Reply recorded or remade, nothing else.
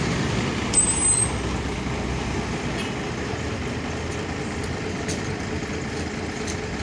recorded